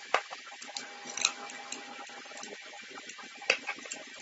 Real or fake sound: real